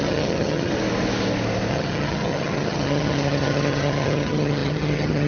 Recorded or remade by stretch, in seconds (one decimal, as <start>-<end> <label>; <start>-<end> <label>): 0.0-0.7 remade; 0.7-1.7 recorded; 1.7-5.3 remade